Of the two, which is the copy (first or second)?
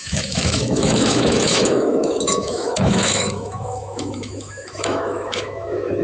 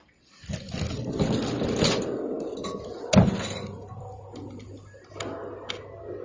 first